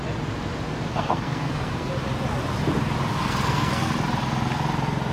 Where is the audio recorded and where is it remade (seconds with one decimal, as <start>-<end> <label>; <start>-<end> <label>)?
0.0-0.9 recorded; 0.9-1.9 remade; 1.9-3.1 recorded; 3.1-3.9 remade; 3.9-5.1 recorded